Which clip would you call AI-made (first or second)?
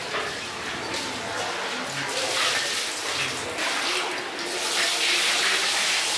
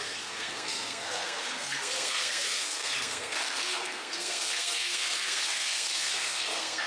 second